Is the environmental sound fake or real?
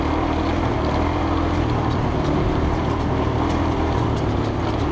real